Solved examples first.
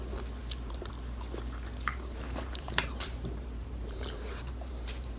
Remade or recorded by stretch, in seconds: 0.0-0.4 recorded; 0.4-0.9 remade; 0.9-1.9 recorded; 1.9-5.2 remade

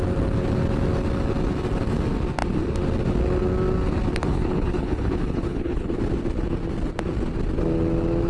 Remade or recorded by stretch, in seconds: 0.0-4.3 recorded; 4.3-5.9 remade; 5.9-8.3 recorded

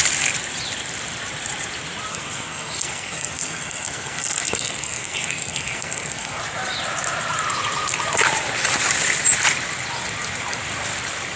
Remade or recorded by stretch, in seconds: 0.0-2.1 recorded; 2.1-6.4 remade; 6.4-11.4 recorded

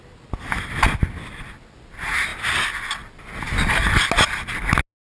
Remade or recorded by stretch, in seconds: 0.0-5.1 recorded

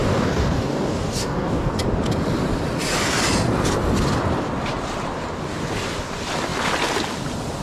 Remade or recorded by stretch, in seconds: 0.0-1.7 remade; 1.7-7.6 recorded

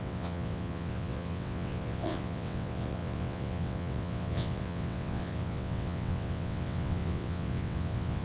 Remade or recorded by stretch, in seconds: 0.0-8.2 remade